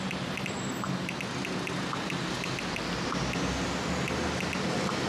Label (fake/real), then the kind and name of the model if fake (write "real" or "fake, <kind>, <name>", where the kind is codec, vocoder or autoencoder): real